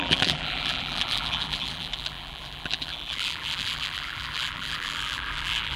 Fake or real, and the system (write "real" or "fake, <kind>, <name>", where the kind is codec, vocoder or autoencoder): fake, vocoder, BigVGAN v2